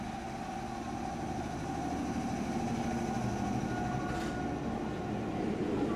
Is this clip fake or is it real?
real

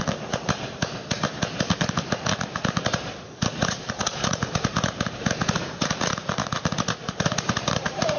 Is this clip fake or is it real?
fake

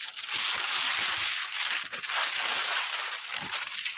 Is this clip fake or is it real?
real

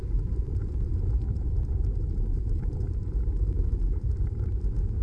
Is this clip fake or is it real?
fake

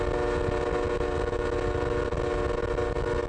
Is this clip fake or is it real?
real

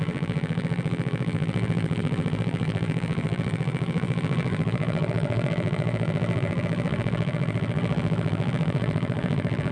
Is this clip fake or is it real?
fake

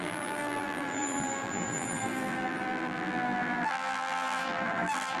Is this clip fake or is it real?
fake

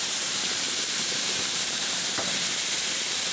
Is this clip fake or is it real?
fake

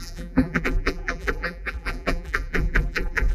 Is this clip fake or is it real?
fake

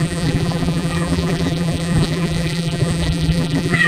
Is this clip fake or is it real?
fake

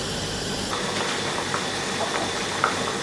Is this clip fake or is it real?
fake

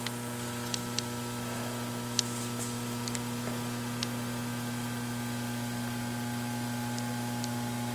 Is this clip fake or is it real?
real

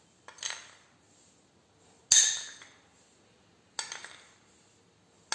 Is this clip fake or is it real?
real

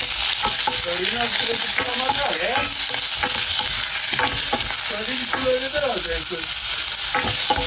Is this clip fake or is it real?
real